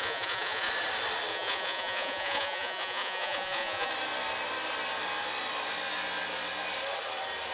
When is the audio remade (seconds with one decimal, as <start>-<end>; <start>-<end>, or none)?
0.0-0.7; 1.3-3.9